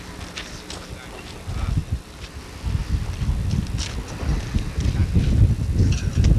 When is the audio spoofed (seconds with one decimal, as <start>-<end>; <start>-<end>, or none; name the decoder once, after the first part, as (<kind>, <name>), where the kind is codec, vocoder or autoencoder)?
none